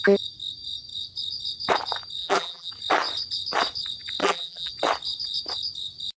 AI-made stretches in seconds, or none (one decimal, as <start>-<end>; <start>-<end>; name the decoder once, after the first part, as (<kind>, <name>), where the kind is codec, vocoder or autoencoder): 2.2-2.7 (vocoder, BigVGAN v2); 4.2-4.7